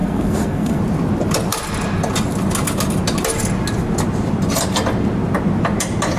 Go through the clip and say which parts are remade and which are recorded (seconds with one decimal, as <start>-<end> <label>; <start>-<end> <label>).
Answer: 0.0-0.8 remade; 0.8-6.2 recorded